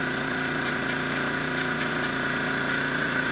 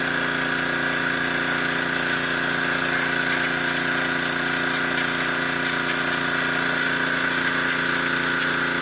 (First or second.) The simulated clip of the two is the first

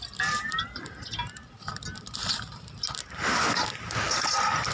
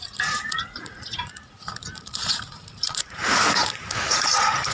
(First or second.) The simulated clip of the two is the second